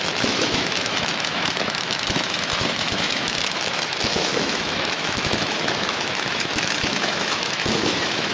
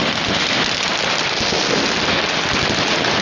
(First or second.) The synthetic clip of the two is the first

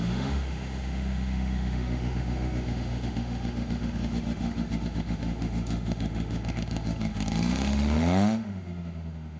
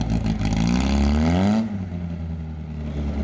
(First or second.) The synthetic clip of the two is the first